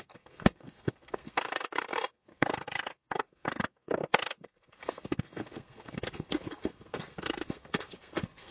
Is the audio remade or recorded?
remade